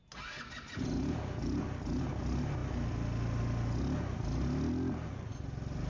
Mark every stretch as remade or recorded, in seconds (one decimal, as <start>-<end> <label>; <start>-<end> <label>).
0.0-5.9 recorded